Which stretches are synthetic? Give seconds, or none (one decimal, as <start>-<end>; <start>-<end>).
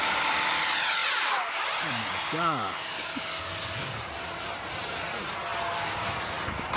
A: none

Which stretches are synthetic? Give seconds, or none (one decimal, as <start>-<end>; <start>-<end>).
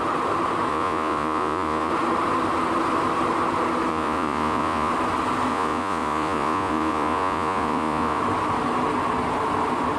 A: 0.7-1.9; 3.9-4.9; 5.5-8.2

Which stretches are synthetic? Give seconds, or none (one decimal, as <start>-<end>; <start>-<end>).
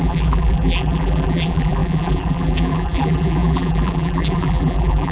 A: 0.0-5.1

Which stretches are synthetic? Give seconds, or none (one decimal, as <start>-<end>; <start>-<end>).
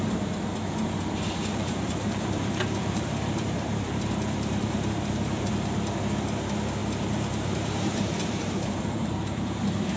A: 1.5-5.5; 6.8-9.6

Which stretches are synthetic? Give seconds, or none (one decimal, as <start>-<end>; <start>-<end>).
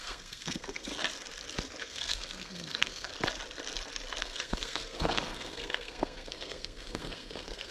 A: 0.0-0.9; 1.8-3.1; 4.2-7.7